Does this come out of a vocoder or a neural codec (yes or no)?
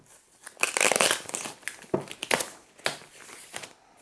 no